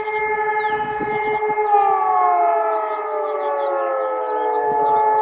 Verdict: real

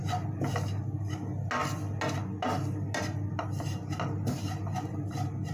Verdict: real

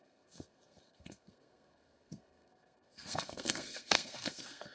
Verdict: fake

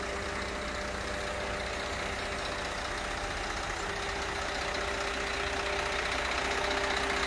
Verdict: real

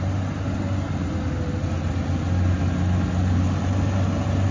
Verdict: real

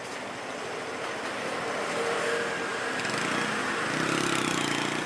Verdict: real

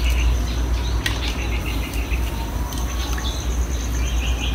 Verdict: real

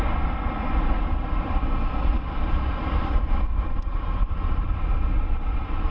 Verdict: real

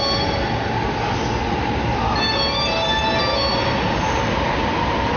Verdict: real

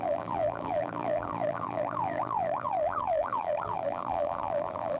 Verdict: fake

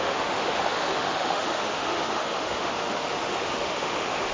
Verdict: fake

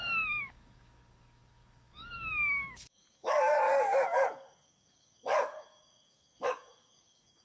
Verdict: fake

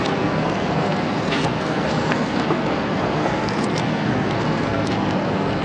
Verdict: fake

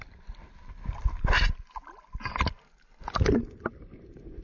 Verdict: real